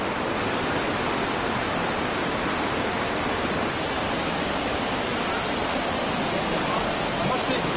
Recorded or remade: recorded